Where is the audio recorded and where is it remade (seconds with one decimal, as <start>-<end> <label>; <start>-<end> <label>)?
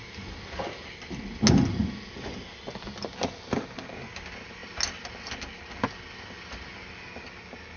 0.0-7.8 recorded